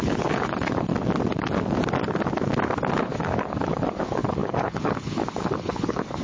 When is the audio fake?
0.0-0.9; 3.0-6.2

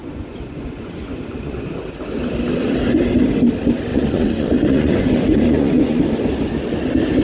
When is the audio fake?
0.0-1.7; 3.9-6.0